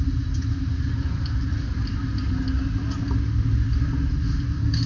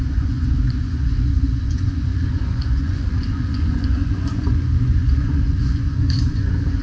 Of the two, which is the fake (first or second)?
second